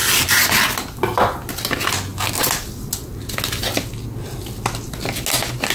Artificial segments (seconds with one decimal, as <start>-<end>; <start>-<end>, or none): none